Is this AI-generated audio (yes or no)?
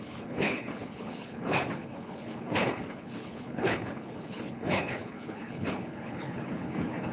yes